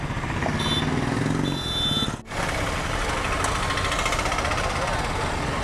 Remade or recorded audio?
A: recorded